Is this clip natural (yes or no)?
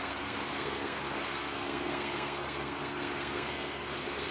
no